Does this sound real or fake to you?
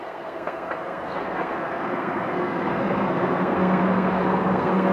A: fake